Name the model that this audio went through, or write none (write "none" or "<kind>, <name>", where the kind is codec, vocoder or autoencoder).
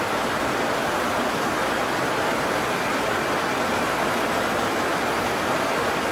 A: none